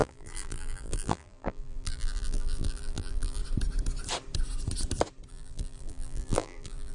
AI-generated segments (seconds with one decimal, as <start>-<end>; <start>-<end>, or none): 0.0-3.4; 5.3-6.9